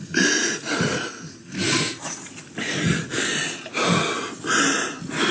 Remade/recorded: recorded